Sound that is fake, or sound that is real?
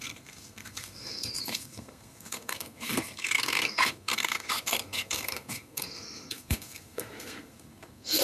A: fake